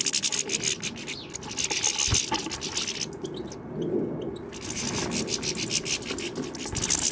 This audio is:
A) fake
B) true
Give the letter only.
B